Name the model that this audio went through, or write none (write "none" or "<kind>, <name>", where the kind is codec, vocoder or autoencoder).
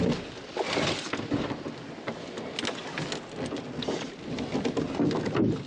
none